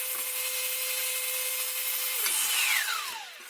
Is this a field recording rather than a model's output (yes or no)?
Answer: yes